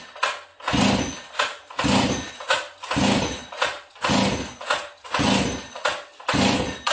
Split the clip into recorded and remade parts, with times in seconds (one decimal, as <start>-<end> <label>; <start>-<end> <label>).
0.0-6.9 recorded